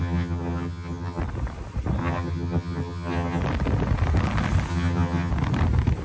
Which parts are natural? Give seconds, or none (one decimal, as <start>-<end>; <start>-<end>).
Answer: 1.2-2.0; 3.4-4.7; 5.3-6.0